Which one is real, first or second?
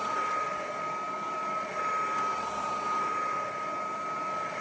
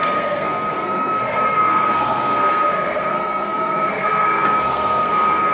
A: first